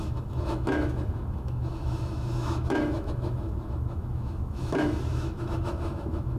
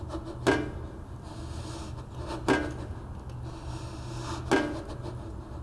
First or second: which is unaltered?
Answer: second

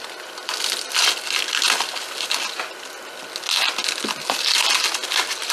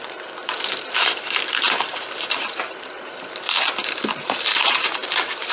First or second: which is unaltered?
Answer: first